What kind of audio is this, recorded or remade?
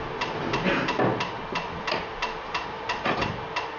recorded